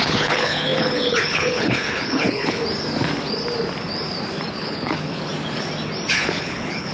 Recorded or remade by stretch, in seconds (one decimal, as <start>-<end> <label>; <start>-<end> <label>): 0.0-2.6 remade; 2.6-4.5 recorded; 4.5-5.3 remade; 5.3-6.1 recorded; 6.1-6.9 remade